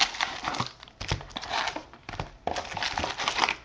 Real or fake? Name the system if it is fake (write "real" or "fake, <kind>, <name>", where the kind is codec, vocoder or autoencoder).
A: real